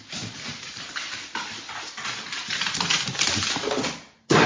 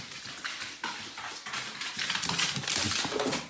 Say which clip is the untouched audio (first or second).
second